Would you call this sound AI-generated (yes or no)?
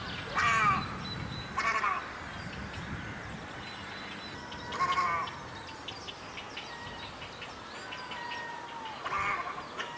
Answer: no